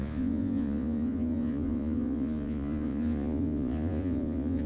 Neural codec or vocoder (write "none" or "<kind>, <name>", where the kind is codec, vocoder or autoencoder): vocoder, Vocos